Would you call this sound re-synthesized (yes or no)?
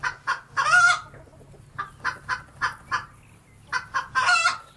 no